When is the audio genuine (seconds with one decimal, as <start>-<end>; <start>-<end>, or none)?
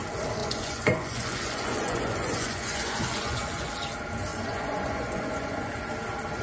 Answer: 0.0-0.4; 3.7-4.3; 5.7-6.4